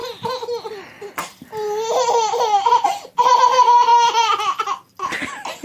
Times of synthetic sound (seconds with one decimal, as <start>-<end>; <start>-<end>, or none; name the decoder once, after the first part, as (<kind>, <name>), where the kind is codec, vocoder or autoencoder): none